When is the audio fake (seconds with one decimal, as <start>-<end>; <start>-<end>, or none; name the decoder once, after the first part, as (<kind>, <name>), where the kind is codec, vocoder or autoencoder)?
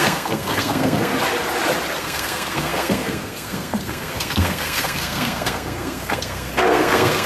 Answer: 0.0-1.1 (codec, SNAC); 2.0-7.3